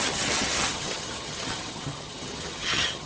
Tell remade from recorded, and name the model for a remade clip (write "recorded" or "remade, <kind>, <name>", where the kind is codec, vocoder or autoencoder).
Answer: remade, vocoder, HiFi-GAN